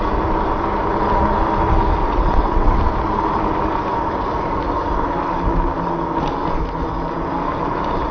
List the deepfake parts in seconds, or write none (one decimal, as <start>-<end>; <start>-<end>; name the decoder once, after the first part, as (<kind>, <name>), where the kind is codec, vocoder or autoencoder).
2.0-2.8 (vocoder, WaveNeXt)